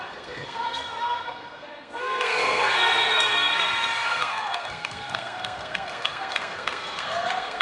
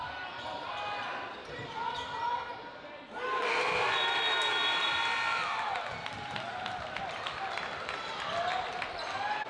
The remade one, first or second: first